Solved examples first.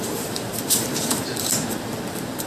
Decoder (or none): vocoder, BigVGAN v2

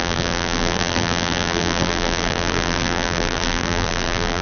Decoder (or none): vocoder, BigVGAN v2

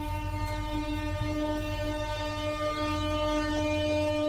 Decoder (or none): autoencoder, DAC-VAE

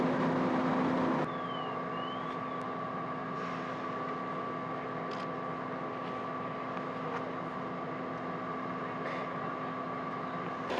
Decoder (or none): none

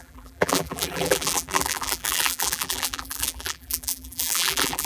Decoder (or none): vocoder, BigVGAN v2